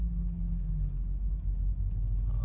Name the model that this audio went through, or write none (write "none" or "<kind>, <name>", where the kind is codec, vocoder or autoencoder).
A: none